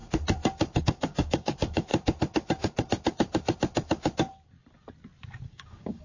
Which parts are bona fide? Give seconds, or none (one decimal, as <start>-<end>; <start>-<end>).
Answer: 0.0-0.8; 1.9-5.5